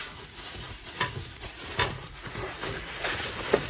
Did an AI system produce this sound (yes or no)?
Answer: yes